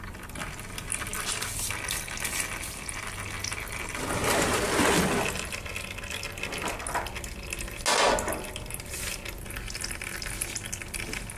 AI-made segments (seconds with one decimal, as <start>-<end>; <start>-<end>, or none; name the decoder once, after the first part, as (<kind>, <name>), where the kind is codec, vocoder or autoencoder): 1.1-1.7 (vocoder, BigVGAN v2)

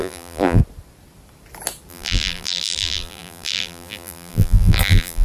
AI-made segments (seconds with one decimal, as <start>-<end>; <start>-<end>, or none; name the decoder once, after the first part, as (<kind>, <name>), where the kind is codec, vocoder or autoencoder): 0.0-0.6 (vocoder, BigVGAN v2); 1.9-5.2

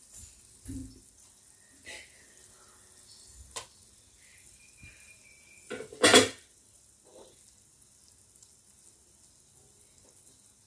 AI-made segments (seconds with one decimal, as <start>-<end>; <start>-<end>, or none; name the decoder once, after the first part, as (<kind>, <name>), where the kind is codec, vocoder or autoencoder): 6.1-6.8 (vocoder, BigVGAN v2)

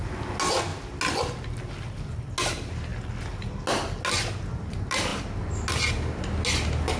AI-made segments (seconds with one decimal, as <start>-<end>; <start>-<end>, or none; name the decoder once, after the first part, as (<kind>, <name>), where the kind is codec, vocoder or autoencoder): none